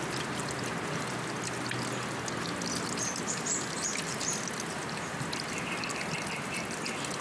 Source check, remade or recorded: recorded